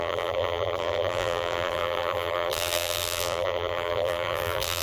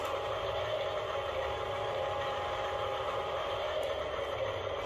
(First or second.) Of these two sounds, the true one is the second